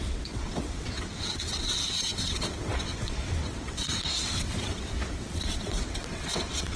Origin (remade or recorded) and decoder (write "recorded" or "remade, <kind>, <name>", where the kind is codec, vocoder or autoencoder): remade, vocoder, WaveNeXt